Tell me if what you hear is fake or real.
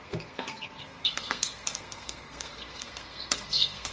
fake